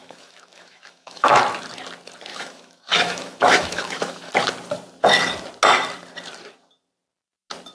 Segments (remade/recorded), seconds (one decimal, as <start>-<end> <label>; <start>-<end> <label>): 0.0-1.4 remade; 1.4-2.3 recorded; 2.3-4.3 remade; 4.3-7.7 recorded